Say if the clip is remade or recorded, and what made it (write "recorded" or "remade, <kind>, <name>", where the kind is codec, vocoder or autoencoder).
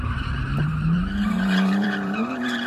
remade, vocoder, BigVGAN v2